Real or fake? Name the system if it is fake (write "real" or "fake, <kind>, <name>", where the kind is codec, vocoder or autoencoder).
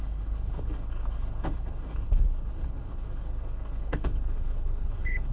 fake, codec, HILCodec